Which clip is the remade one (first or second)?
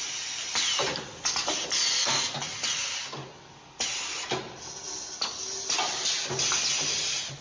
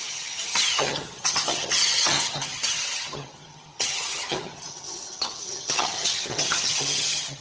second